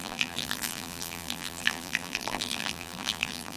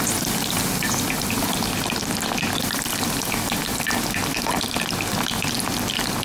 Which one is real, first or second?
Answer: second